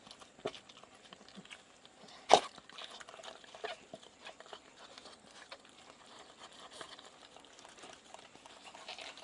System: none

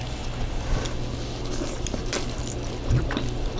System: none